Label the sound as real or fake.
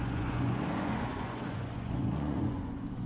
fake